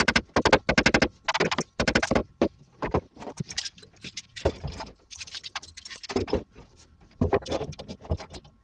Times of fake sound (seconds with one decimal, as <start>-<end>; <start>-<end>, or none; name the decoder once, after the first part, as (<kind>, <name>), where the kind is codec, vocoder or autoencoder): 2.2-6.5 (vocoder, BigVGAN v2)